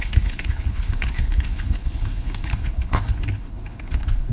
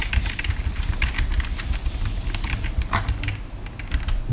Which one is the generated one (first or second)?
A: first